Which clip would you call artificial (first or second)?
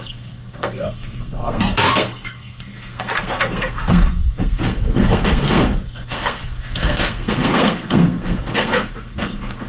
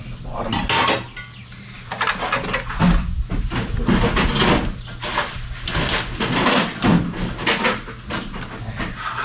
first